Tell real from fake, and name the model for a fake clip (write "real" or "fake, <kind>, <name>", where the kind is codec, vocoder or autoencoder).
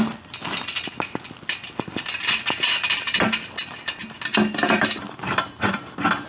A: fake, vocoder, BigVGAN v2